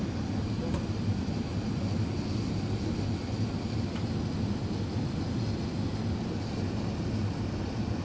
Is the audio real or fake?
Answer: real